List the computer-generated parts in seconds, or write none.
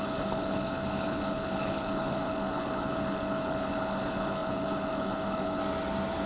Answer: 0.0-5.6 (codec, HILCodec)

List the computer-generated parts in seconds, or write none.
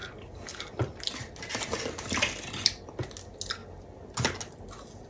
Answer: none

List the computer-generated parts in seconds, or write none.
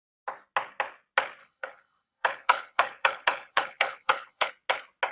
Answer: 1.4-4.5 (codec, HILCodec)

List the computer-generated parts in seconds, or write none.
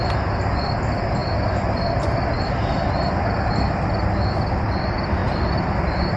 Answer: none